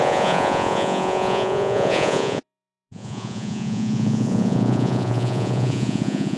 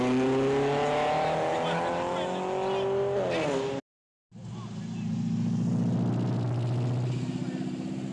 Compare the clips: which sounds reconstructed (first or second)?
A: first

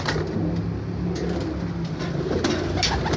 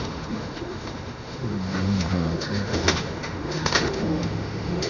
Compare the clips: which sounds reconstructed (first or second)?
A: second